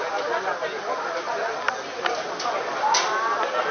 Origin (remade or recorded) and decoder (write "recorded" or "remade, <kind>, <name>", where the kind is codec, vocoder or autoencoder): recorded